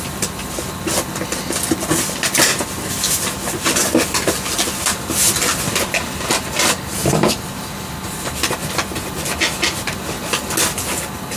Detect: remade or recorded recorded